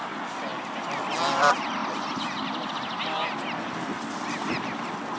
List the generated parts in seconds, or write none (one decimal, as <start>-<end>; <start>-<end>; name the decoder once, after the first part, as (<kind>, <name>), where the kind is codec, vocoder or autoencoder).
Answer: none